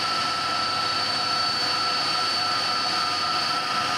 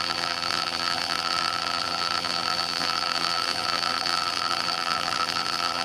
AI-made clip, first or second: second